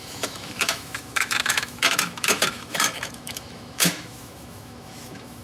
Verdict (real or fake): fake